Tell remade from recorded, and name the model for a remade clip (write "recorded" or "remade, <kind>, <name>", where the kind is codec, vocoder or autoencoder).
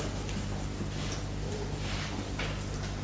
recorded